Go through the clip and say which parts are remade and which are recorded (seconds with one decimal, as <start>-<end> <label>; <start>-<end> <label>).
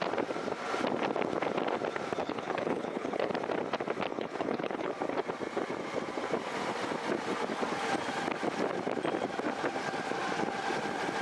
0.0-2.2 recorded; 2.2-3.3 remade; 3.3-4.1 recorded; 4.1-4.9 remade; 4.9-11.2 recorded